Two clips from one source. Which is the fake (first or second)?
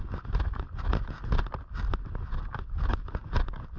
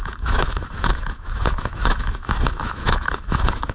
second